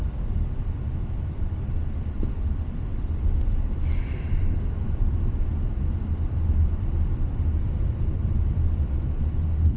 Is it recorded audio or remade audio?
remade